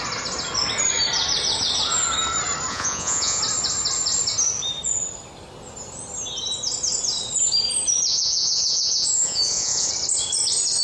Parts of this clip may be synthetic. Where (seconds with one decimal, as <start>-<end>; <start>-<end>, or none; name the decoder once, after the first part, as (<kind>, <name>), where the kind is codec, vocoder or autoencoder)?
2.7-3.4 (vocoder, Vocos); 8.1-9.9